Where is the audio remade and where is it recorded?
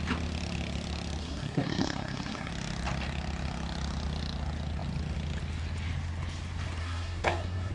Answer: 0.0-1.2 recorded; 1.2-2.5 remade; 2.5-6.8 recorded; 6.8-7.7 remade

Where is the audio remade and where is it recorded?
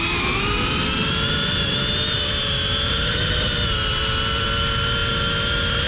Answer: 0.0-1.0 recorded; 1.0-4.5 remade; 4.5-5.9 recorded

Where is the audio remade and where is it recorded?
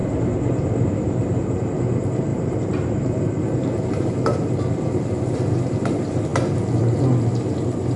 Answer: 0.0-2.3 recorded; 2.3-3.2 remade; 3.2-8.0 recorded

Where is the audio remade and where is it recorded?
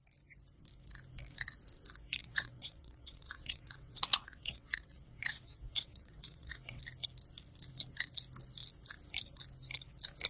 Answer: 0.0-2.2 recorded; 2.2-6.8 remade; 6.8-10.3 recorded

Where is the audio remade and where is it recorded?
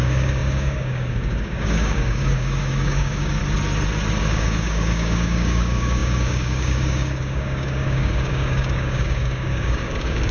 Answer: 0.0-3.4 remade; 3.4-4.2 recorded; 4.2-10.3 remade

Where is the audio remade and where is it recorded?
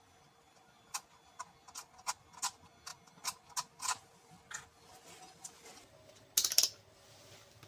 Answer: 0.0-7.7 recorded